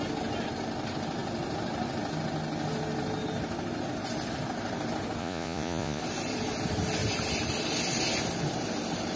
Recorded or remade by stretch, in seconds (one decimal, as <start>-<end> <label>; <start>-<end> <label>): 0.0-5.2 recorded; 5.2-6.0 remade; 6.0-9.2 recorded